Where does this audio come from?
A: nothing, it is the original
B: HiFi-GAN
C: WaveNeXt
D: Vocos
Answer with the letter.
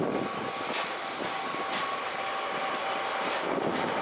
A